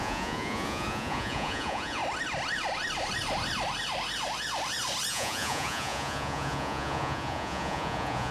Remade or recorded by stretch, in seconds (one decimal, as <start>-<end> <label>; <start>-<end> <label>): 0.0-2.0 remade; 2.0-5.1 recorded; 5.1-8.3 remade